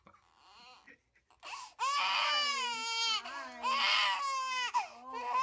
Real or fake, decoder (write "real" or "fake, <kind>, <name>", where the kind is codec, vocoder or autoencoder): real